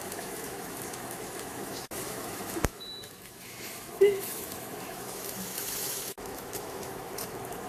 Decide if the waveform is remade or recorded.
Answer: remade